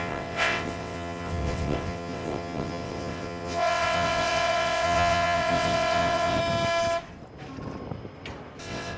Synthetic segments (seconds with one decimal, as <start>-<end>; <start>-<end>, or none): 0.0-6.4; 8.6-9.0